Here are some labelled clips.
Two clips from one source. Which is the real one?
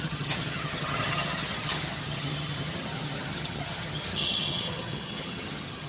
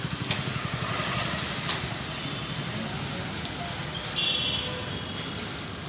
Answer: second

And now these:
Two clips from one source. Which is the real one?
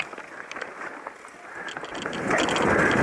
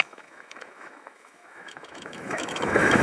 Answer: first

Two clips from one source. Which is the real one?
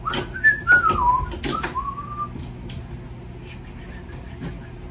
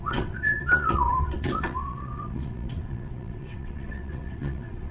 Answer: first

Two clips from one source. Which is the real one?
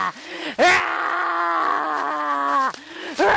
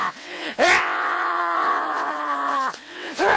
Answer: first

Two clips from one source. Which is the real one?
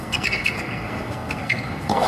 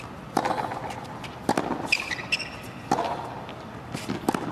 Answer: second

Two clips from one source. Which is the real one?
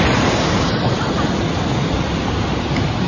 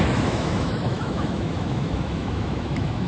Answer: first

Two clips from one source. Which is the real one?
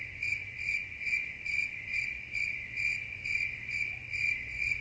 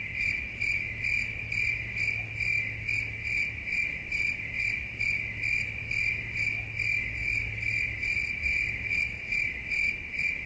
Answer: second